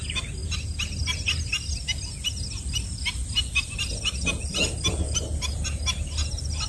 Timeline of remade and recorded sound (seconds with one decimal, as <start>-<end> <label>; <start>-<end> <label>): 0.0-6.7 recorded